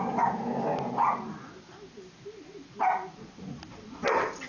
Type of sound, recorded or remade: recorded